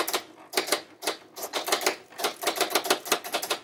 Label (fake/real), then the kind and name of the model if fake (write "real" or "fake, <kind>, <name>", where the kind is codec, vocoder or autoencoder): real